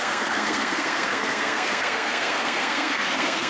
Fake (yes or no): yes